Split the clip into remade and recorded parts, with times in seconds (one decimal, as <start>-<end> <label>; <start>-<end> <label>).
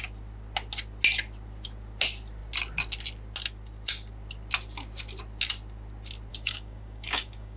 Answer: 0.0-6.3 recorded; 6.3-7.6 remade